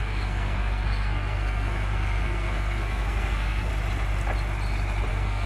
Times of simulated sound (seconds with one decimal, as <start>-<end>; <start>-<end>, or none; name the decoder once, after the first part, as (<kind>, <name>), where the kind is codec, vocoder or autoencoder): 0.0-3.7 (codec, SNAC); 5.1-5.5